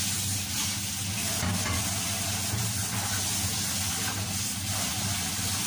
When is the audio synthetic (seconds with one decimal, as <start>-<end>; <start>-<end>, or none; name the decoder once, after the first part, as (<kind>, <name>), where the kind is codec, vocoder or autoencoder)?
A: none